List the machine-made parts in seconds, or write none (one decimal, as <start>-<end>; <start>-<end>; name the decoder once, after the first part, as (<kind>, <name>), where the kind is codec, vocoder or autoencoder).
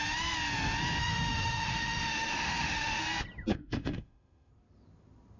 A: 1.0-3.0 (autoencoder, DAC-VAE); 3.5-4.5